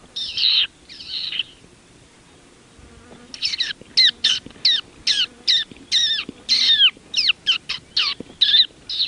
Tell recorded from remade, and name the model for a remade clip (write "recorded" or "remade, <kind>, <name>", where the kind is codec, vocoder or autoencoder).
recorded